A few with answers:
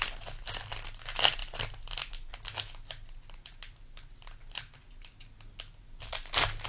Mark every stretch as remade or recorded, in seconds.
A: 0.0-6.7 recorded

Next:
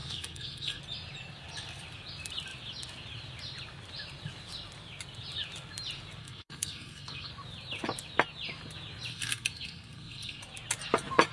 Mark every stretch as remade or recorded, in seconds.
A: 0.0-0.8 remade; 0.8-6.2 recorded; 6.2-7.3 remade; 7.3-9.1 recorded; 9.1-10.4 remade; 10.4-11.3 recorded

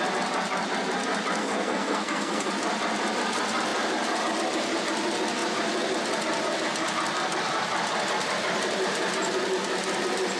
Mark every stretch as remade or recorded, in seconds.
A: 0.0-1.4 recorded; 1.4-2.5 remade; 2.5-10.4 recorded

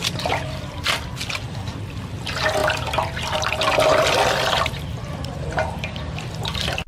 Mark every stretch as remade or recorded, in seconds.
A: 0.0-6.9 recorded

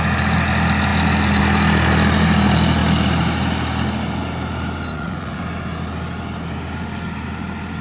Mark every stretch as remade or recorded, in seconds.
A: 0.0-4.9 recorded; 4.9-5.4 remade; 5.4-7.8 recorded

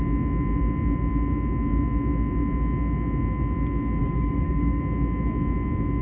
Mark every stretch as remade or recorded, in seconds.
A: 0.0-4.0 recorded; 4.0-4.8 remade; 4.8-6.0 recorded